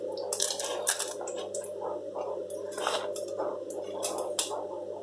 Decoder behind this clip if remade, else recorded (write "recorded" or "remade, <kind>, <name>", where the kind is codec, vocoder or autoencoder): recorded